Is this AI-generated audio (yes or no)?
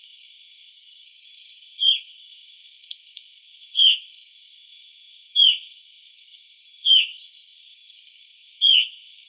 yes